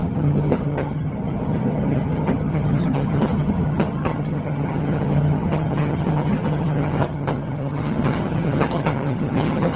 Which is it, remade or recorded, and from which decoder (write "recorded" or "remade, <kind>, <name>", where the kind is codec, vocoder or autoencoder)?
remade, vocoder, HiFi-GAN